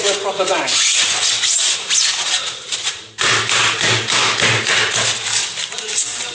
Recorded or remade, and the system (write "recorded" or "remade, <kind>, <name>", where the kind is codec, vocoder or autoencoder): recorded